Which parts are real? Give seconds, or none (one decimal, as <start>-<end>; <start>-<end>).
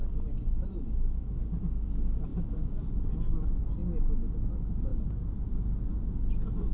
0.0-6.7